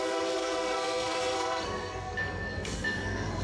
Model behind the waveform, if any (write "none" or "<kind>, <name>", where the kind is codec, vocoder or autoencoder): codec, SNAC